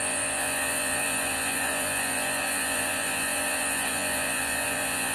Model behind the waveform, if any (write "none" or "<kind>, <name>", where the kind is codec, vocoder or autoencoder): vocoder, Vocos